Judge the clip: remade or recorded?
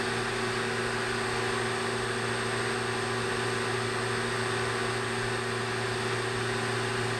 recorded